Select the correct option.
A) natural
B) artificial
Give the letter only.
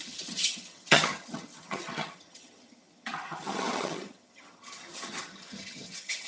B